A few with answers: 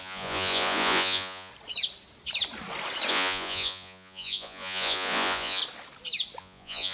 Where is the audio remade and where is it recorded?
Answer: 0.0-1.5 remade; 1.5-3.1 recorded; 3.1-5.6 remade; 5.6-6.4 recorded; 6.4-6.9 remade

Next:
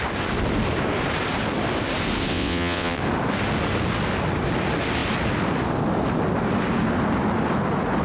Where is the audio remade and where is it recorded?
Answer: 0.0-2.3 recorded; 2.3-3.0 remade; 3.0-8.0 recorded

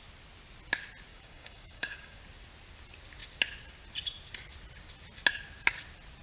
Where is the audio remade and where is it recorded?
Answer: 0.0-1.1 recorded; 1.1-2.2 remade; 2.2-6.2 recorded

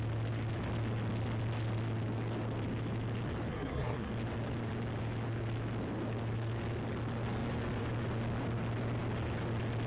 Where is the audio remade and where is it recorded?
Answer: 0.0-3.5 recorded; 3.5-4.1 remade; 4.1-9.9 recorded

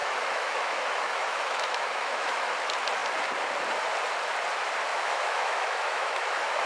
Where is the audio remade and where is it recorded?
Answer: 0.0-2.5 remade; 2.5-4.9 recorded; 4.9-6.7 remade